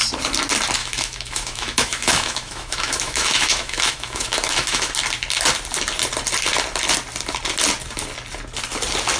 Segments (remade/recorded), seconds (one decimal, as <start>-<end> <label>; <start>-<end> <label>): 0.0-0.8 recorded; 0.8-4.9 remade; 4.9-9.2 recorded